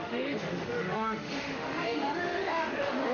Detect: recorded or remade remade